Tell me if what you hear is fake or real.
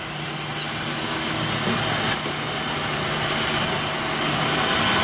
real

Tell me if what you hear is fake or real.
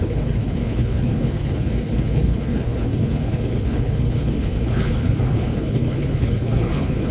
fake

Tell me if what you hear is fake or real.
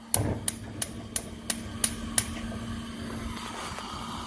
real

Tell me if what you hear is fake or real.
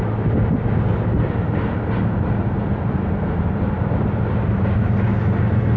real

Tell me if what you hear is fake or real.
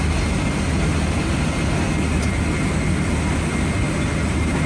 real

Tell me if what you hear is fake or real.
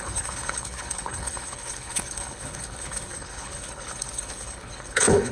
fake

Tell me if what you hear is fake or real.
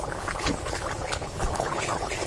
fake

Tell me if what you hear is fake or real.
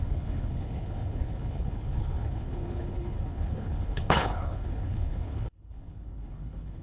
fake